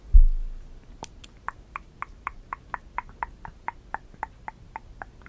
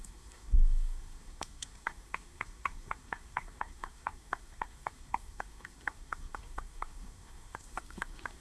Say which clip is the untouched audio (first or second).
first